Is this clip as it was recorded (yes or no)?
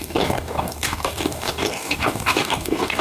no